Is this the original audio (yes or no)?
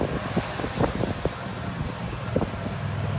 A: yes